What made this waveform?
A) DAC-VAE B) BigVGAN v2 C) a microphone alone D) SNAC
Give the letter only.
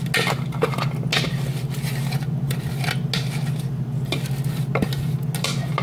C